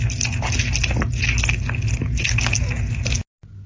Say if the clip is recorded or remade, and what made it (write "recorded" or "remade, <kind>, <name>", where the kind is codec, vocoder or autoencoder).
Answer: recorded